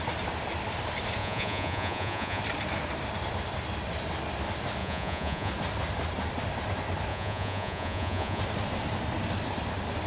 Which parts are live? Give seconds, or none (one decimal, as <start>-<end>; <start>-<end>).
0.0-1.2; 2.4-4.8; 5.5-7.1; 8.4-10.1